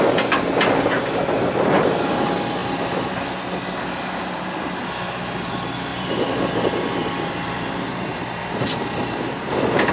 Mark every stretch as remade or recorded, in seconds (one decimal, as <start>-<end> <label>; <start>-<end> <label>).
0.0-2.6 recorded; 2.6-3.6 remade; 3.6-5.9 recorded; 5.9-9.9 remade

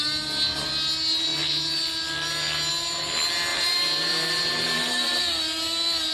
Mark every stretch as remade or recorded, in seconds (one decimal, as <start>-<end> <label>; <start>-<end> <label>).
0.0-3.5 recorded; 3.5-5.2 remade; 5.2-6.1 recorded

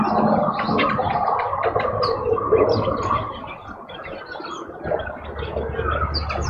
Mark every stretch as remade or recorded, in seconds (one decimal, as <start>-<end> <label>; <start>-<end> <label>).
0.0-6.5 recorded

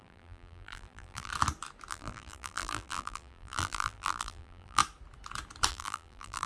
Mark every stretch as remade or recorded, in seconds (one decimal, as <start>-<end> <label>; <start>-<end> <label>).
0.0-1.3 remade; 1.3-1.9 recorded; 1.9-4.8 remade; 4.8-5.7 recorded; 5.7-6.5 remade

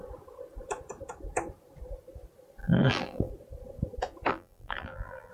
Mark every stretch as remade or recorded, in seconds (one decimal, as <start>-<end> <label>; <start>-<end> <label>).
0.0-2.6 recorded; 2.6-3.3 remade; 3.3-4.3 recorded; 4.3-5.3 remade

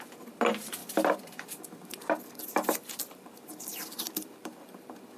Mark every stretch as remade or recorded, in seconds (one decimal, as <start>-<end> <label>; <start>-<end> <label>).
0.0-0.8 recorded; 0.8-1.6 remade; 1.6-2.4 recorded; 2.4-5.2 remade